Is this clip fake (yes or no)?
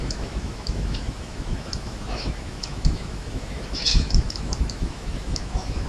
yes